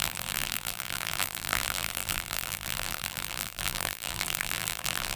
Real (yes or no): no